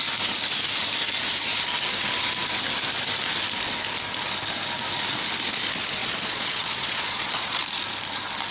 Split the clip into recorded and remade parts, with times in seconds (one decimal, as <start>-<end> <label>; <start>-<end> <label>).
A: 0.0-6.0 recorded; 6.0-7.6 remade; 7.6-8.5 recorded